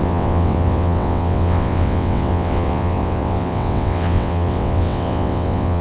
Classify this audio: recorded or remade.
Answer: remade